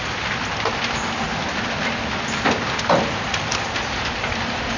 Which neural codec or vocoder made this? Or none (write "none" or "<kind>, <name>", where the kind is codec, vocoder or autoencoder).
none